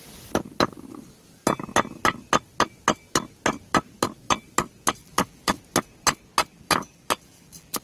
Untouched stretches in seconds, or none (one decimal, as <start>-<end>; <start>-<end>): 0.0-5.0; 5.6-6.5